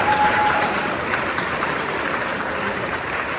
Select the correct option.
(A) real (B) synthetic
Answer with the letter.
B